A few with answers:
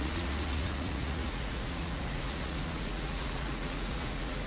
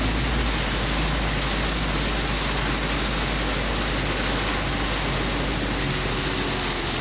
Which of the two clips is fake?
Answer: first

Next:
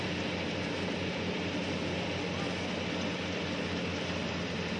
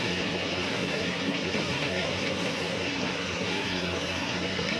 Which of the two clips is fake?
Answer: second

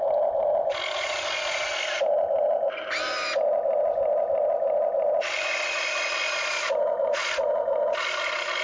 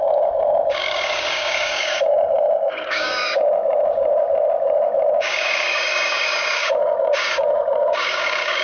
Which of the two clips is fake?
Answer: second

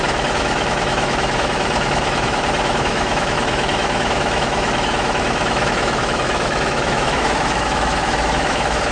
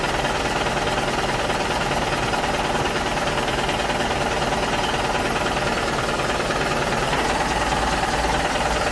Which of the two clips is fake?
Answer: first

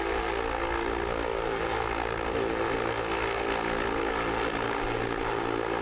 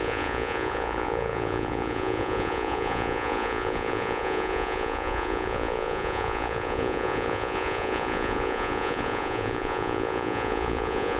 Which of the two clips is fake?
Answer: second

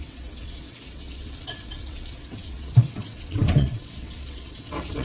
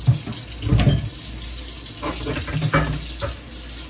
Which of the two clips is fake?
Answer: first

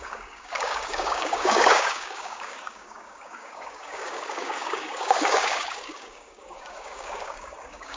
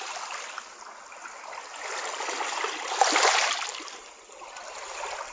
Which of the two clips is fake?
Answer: first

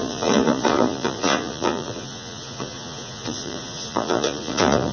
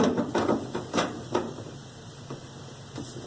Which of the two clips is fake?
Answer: first